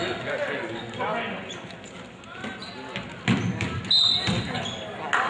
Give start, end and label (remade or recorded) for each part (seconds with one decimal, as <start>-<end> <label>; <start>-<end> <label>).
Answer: 0.0-5.3 recorded